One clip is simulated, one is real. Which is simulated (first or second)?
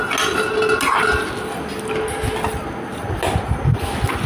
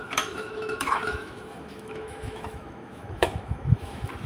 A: second